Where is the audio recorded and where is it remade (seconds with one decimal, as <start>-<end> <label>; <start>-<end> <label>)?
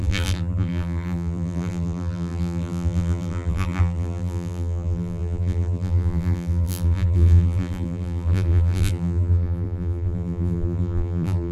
0.0-11.5 remade